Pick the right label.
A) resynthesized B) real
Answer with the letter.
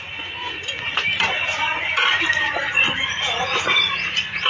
A